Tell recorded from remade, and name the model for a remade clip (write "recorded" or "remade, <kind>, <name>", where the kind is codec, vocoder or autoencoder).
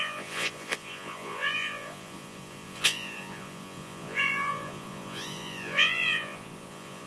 remade, vocoder, Vocos